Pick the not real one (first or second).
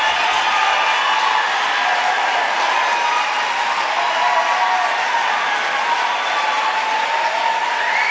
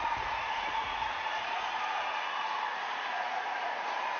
second